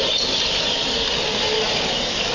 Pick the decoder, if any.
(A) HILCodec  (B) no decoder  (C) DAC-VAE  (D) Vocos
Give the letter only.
B